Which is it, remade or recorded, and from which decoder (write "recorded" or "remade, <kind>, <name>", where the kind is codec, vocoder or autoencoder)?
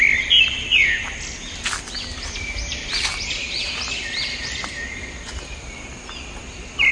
remade, vocoder, BigVGAN v2